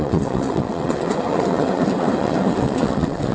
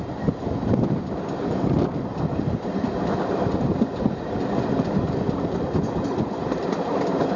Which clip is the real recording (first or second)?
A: second